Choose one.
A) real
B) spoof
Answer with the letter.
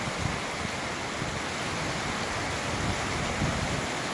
A